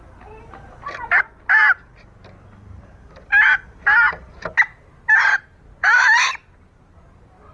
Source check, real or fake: real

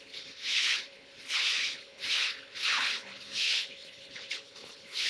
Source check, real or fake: fake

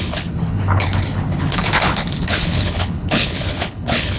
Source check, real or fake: fake